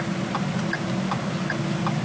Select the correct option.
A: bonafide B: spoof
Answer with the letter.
A